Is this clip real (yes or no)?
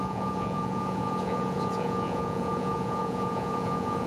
no